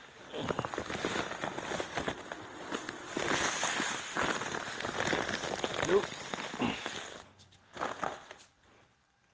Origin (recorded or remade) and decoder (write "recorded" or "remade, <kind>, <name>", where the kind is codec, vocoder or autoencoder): recorded